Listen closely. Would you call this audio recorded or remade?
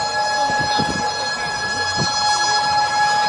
recorded